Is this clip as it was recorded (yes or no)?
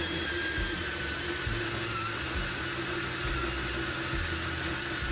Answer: yes